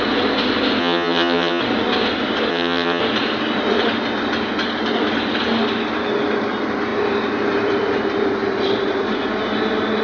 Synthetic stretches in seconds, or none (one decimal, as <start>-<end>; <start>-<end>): 0.8-1.6; 2.5-3.0